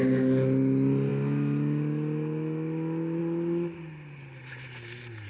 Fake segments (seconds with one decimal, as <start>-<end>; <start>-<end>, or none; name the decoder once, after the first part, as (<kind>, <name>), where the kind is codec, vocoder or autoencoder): none